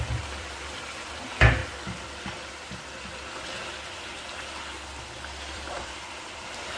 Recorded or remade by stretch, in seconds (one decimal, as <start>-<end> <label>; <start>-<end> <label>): 0.0-1.6 remade; 1.6-5.5 recorded; 5.5-6.8 remade